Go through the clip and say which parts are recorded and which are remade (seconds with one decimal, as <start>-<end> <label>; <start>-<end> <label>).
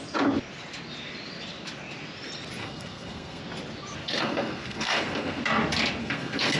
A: 0.0-2.6 recorded; 2.6-3.4 remade; 3.4-4.0 recorded; 4.0-5.4 remade; 5.4-6.0 recorded; 6.0-6.6 remade